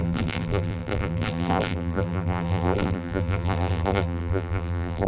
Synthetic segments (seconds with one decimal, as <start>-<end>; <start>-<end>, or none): 0.0-5.1